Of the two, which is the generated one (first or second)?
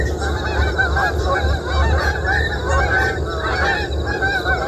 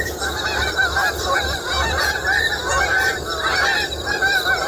second